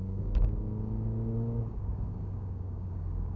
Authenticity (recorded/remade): remade